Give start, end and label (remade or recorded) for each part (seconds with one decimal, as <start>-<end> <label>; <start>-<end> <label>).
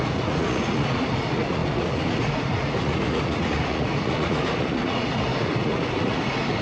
0.0-6.6 remade